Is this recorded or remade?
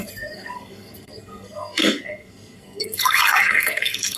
remade